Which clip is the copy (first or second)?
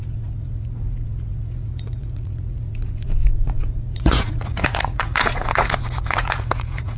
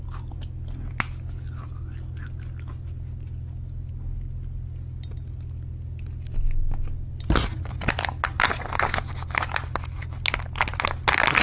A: first